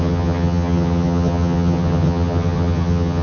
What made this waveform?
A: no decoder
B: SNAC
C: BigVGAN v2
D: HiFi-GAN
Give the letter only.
D